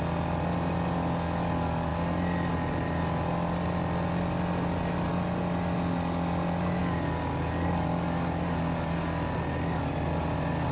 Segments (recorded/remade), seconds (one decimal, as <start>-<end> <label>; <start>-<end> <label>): 0.0-10.7 recorded